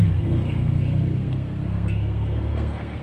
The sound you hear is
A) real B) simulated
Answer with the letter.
B